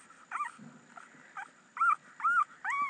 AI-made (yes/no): no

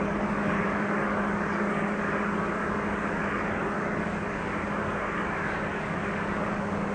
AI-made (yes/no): yes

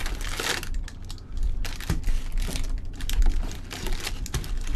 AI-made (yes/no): no